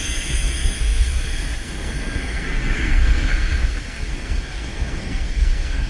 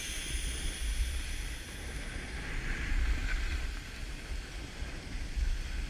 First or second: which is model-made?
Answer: first